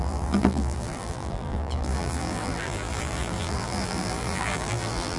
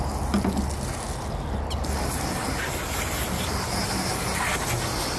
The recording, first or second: second